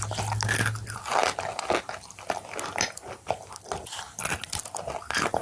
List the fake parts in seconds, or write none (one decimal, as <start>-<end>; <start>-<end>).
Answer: none